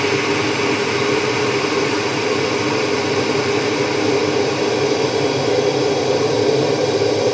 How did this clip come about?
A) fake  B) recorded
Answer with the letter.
B